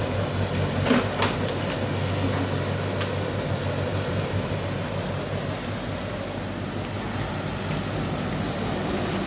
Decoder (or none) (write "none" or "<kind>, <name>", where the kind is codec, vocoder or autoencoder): none